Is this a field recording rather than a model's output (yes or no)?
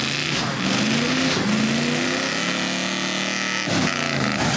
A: yes